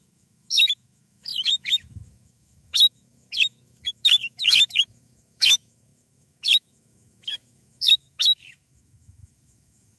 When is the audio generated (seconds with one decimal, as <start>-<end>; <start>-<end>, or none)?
0.0-10.0